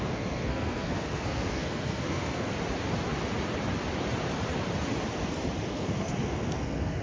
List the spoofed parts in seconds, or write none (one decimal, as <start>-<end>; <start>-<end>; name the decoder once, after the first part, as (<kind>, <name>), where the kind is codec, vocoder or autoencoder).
0.0-2.5 (codec, SNAC); 5.7-7.0